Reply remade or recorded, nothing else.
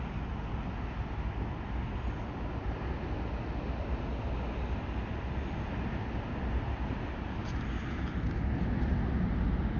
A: recorded